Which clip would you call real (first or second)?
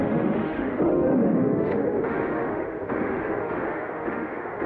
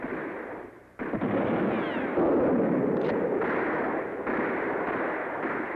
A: second